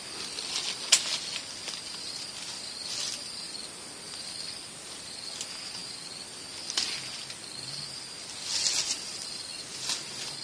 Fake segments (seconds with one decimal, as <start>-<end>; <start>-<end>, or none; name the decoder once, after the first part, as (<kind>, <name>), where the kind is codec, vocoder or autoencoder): none